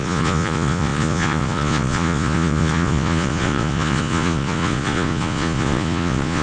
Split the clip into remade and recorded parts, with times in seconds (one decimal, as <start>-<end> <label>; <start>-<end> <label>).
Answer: 0.0-6.4 remade